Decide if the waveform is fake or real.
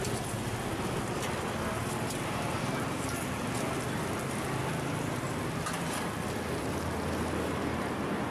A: real